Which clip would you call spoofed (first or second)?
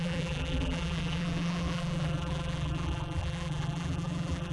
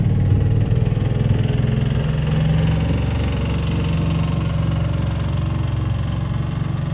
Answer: first